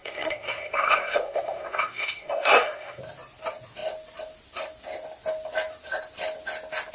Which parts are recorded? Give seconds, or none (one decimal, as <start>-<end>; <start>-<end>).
3.0-6.9